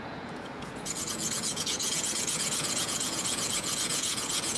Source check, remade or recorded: remade